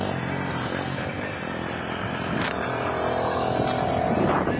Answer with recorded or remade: remade